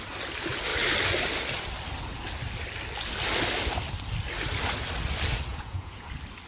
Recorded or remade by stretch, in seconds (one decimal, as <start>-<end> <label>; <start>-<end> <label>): 0.0-5.5 recorded; 5.5-6.1 remade; 6.1-6.5 recorded